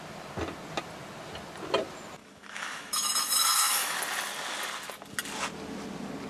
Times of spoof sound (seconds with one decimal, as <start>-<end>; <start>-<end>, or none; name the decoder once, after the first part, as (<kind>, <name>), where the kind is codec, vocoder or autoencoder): 2.2-4.0 (autoencoder, DAC-VAE)